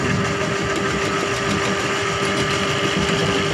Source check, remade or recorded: recorded